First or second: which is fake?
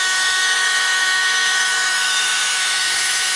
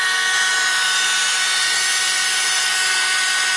first